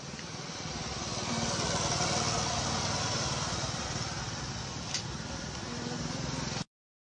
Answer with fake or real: real